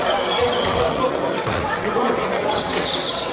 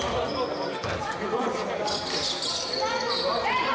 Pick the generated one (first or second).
first